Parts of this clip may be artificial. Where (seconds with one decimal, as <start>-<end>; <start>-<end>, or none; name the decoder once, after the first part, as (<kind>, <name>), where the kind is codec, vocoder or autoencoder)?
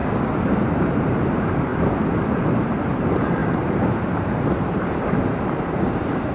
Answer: 0.7-1.7 (vocoder, BigVGAN v2); 2.4-6.3